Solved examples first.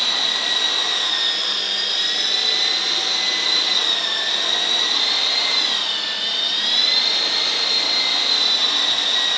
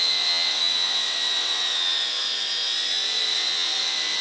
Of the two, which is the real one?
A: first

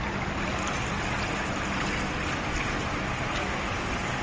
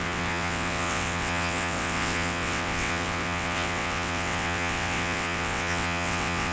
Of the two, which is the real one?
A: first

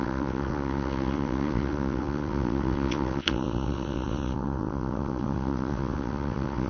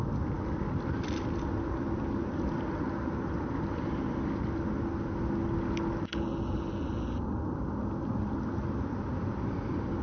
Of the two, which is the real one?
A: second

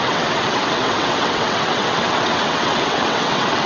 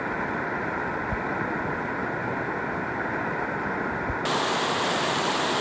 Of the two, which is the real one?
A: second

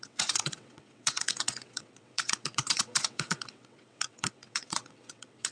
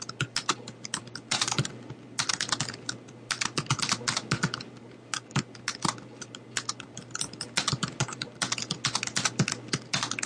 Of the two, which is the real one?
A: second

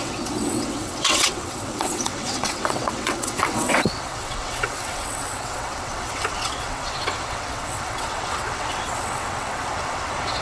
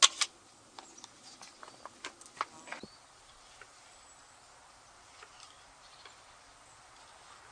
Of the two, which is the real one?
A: second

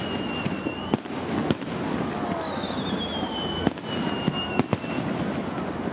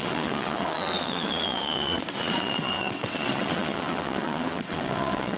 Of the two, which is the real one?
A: first